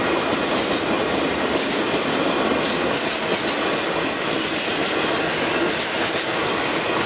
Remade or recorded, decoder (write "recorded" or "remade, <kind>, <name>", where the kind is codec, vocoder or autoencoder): recorded